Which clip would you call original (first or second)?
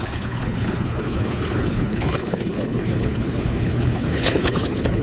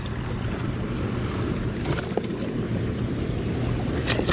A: second